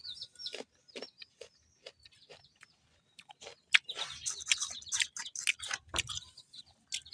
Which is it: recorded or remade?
recorded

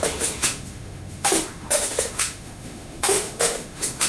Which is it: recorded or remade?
remade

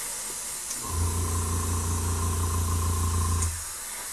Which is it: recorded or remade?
recorded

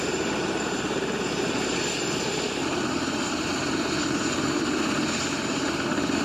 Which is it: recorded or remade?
remade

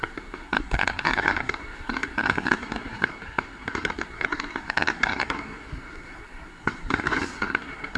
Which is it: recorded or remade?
remade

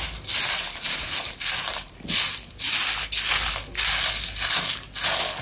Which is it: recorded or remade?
recorded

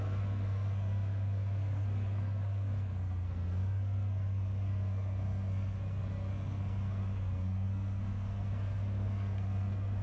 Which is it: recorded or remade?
remade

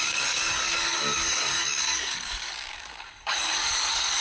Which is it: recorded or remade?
remade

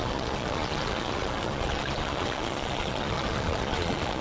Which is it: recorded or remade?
remade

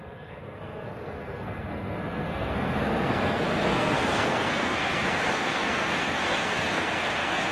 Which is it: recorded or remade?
remade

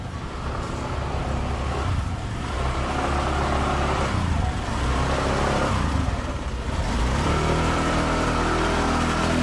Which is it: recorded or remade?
remade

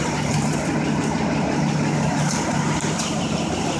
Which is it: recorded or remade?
recorded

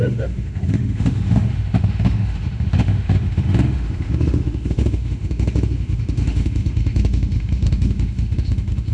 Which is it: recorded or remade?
remade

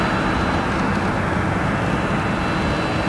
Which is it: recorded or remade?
recorded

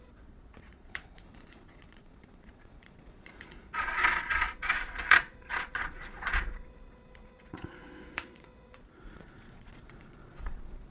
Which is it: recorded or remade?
remade